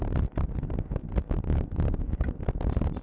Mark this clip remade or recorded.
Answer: recorded